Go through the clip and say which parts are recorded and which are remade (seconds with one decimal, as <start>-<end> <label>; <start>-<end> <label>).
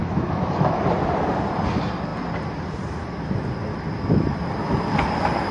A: 0.0-0.8 remade; 0.8-5.5 recorded